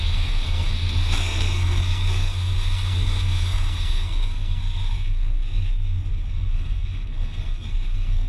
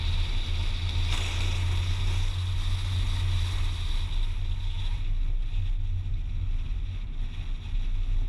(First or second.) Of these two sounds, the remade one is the first